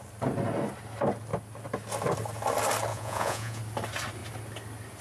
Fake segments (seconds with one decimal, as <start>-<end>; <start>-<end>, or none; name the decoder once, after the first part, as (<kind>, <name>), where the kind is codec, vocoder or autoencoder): 2.9-3.6 (vocoder, Vocos)